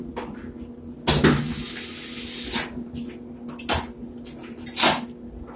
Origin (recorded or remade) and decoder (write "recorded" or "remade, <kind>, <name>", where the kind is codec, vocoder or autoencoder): recorded